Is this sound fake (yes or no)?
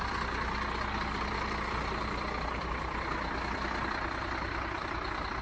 no